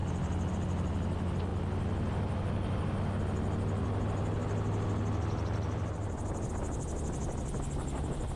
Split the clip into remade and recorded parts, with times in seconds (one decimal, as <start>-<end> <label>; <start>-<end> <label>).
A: 0.0-8.4 recorded